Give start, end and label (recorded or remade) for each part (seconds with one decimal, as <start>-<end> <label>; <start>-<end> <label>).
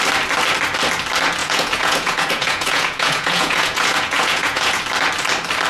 0.0-1.4 recorded; 1.4-4.8 remade; 4.8-5.7 recorded